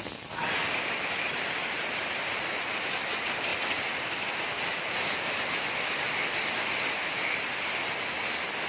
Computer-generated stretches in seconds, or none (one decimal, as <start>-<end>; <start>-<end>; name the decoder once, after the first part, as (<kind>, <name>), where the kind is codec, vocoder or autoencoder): none